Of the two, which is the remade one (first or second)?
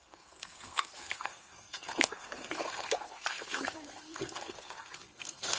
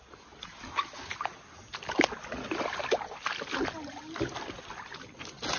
first